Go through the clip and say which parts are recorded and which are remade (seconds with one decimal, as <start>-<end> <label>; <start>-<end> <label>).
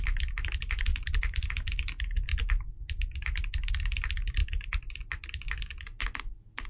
0.0-0.9 recorded; 0.9-1.5 remade; 1.5-4.4 recorded; 4.4-5.0 remade; 5.0-6.7 recorded